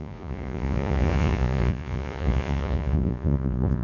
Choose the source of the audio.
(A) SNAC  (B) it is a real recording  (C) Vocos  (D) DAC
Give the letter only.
C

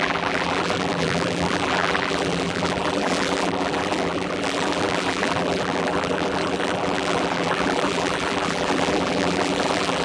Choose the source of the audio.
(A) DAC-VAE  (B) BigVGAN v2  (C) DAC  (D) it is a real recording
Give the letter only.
B